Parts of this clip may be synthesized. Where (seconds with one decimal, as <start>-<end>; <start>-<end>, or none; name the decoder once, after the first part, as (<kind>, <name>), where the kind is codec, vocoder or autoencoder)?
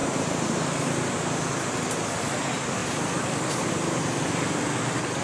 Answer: 0.0-1.0 (vocoder, BigVGAN v2); 2.8-3.7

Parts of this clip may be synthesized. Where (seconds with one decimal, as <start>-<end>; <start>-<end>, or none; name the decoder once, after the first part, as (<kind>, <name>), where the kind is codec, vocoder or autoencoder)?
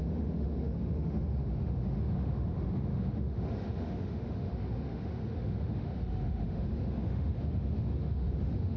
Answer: 0.0-8.8 (autoencoder, DAC-VAE)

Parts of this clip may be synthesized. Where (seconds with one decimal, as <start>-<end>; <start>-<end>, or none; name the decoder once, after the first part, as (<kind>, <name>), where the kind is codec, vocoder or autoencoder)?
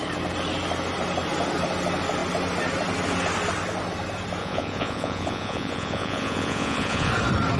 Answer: 4.4-7.1 (vocoder, Vocos)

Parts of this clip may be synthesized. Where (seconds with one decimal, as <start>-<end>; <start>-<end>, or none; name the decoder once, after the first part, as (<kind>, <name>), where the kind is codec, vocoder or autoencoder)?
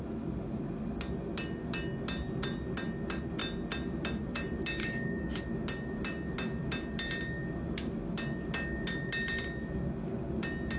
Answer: 4.8-5.4 (codec, DAC)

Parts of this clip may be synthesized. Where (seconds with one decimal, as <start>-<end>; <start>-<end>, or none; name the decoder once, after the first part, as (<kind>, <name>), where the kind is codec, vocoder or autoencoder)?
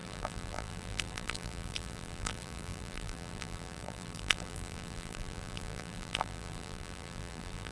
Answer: 0.0-7.7 (vocoder, BigVGAN v2)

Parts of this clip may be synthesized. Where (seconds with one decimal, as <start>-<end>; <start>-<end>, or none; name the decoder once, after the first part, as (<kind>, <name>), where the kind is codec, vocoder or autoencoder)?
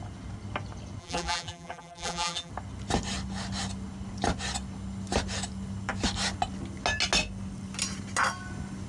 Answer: 1.0-2.5 (vocoder, BigVGAN v2)